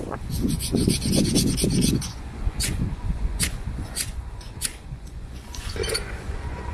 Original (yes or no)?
no